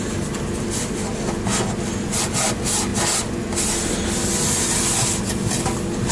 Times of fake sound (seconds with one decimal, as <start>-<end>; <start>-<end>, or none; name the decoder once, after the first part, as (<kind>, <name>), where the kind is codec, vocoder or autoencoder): none